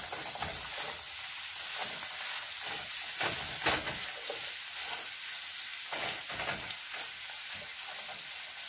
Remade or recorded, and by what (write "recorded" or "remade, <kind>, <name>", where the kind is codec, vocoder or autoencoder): recorded